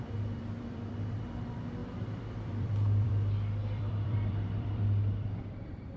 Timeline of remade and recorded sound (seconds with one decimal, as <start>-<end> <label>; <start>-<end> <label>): 0.0-6.0 remade